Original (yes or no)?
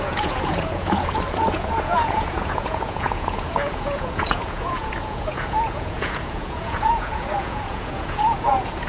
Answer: no